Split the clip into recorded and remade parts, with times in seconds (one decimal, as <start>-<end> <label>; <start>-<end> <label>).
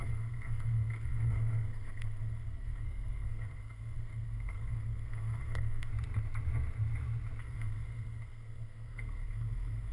0.0-5.9 remade; 5.9-7.4 recorded; 7.4-9.9 remade